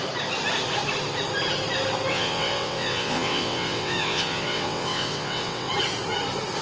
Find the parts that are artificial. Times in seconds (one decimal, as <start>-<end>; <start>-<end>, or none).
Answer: 2.1-5.7